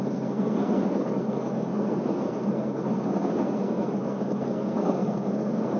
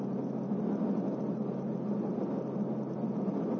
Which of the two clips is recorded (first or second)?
second